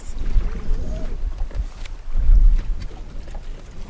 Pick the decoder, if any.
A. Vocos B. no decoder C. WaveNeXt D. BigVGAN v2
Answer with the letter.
B